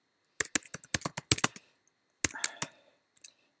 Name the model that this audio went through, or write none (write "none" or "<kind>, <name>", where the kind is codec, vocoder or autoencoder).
none